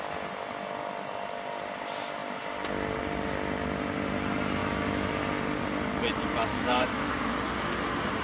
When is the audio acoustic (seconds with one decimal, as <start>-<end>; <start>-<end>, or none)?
0.0-4.6; 5.1-6.5; 7.1-8.2